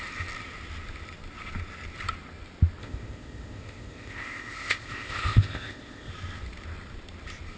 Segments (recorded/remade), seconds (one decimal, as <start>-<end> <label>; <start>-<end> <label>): 0.0-2.8 recorded; 2.8-6.1 remade; 6.1-7.6 recorded